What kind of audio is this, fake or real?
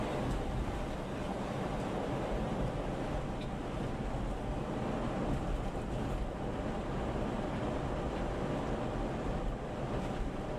real